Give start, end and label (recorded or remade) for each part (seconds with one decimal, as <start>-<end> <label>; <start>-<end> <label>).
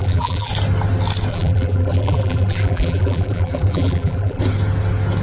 0.0-0.5 remade; 0.5-1.3 recorded; 1.3-4.4 remade; 4.4-5.2 recorded